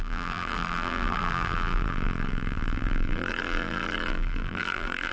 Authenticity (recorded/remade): remade